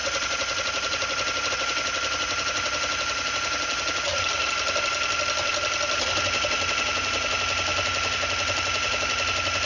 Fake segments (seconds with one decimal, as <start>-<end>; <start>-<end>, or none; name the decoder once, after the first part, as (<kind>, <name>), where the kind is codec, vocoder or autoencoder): none